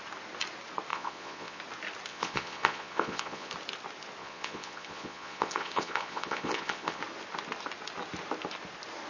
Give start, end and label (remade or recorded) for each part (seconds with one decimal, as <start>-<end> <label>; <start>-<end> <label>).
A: 0.0-0.9 recorded; 0.9-1.6 remade; 1.6-2.1 recorded; 2.1-3.5 remade; 3.5-4.2 recorded; 4.2-7.0 remade; 7.0-9.1 recorded